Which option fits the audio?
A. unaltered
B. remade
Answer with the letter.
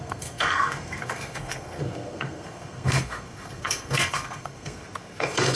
B